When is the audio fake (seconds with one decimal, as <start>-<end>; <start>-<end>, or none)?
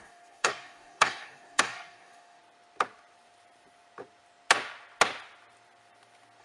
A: 0.0-2.4